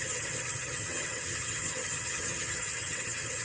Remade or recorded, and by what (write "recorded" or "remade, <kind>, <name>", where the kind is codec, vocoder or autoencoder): remade, vocoder, HiFi-GAN